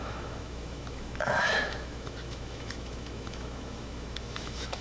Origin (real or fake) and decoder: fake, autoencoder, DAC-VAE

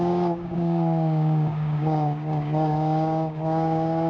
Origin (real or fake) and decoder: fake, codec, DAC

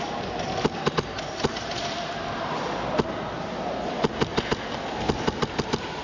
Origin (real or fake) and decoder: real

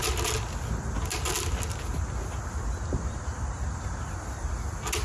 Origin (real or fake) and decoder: real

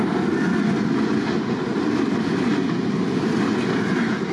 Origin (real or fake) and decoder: real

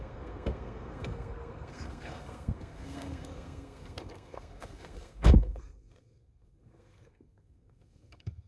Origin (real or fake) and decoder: fake, codec, SNAC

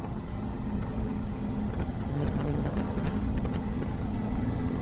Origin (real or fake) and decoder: fake, vocoder, HiFi-GAN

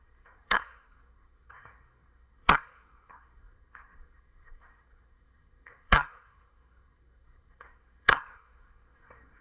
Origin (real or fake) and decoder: fake, codec, SNAC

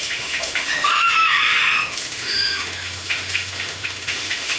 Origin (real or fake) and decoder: fake, autoencoder, DAC-VAE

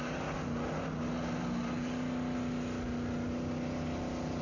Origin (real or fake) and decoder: real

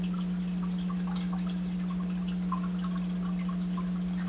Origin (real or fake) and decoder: real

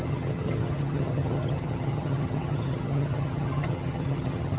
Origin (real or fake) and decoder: fake, vocoder, HiFi-GAN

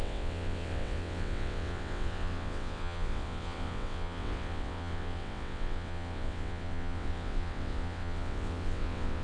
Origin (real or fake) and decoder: fake, vocoder, WaveNeXt